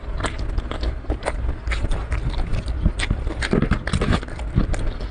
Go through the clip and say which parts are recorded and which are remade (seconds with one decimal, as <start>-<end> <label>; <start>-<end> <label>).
0.0-5.1 recorded